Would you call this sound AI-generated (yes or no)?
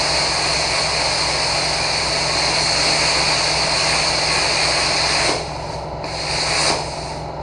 no